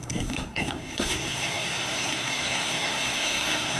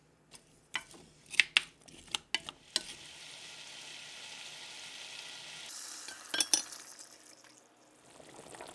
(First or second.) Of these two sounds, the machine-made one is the first